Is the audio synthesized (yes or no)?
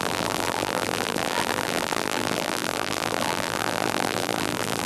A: yes